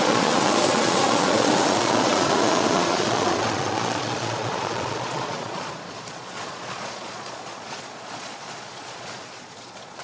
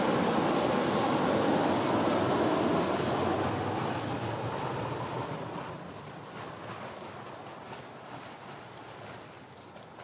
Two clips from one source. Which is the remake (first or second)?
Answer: first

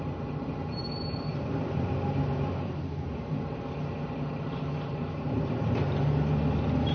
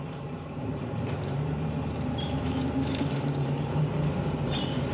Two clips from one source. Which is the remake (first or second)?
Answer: second